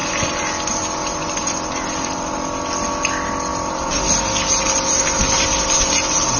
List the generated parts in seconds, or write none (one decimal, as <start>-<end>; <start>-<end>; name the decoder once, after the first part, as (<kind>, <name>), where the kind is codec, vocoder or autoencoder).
none